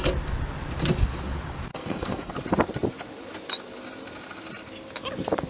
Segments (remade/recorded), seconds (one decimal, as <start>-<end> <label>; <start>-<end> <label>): 0.0-1.7 recorded; 1.7-2.3 remade; 2.3-5.5 recorded